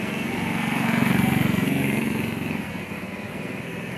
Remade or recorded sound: remade